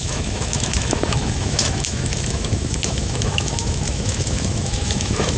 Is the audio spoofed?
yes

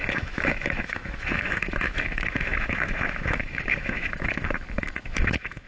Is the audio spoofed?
yes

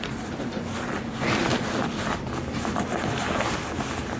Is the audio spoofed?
no